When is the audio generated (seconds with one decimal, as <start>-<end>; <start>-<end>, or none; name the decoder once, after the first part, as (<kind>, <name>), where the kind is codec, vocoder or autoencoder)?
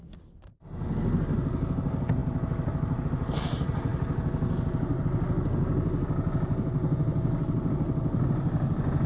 none